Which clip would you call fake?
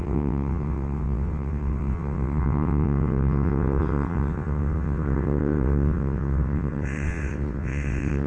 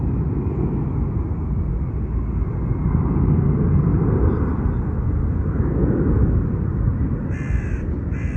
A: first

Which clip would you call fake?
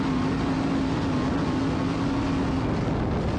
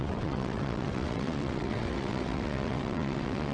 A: second